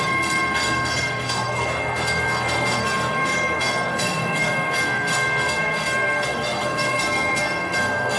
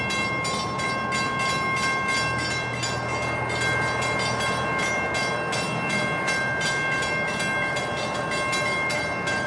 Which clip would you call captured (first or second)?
second